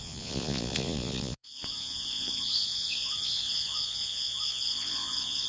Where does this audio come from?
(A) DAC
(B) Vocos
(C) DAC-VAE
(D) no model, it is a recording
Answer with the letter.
B